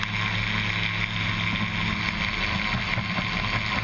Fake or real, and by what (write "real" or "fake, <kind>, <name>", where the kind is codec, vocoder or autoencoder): real